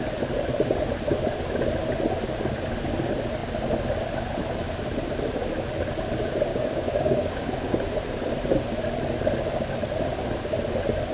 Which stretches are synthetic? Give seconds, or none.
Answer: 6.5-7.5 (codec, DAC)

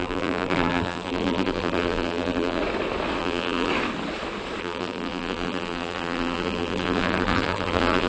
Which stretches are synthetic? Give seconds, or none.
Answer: 0.0-2.6 (vocoder, BigVGAN v2); 3.2-3.7; 4.6-8.1

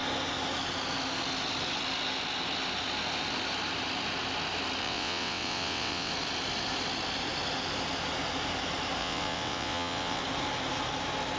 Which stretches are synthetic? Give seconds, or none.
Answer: 4.8-6.1 (vocoder, WaveNeXt); 9.0-10.2